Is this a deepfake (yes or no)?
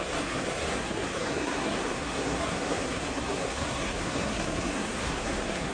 yes